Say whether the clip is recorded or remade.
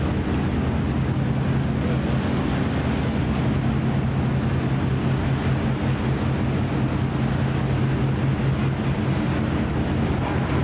recorded